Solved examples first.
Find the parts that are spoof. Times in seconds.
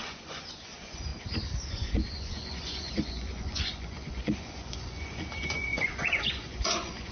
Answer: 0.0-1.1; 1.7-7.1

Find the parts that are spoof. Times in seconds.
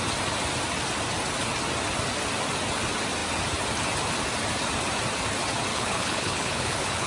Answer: 5.7-7.1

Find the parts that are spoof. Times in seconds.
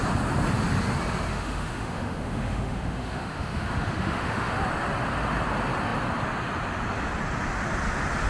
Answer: 1.3-4.5